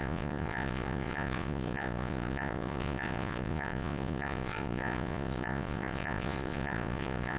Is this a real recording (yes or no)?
no